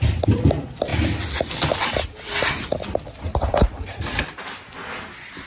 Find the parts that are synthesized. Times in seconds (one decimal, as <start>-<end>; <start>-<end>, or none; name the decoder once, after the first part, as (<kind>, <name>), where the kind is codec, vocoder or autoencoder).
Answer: none